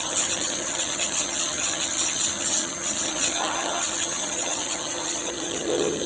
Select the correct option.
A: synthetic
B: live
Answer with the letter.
A